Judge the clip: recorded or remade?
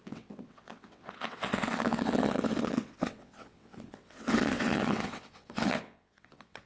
remade